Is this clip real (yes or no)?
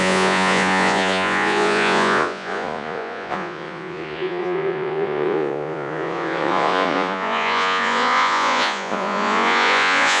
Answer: no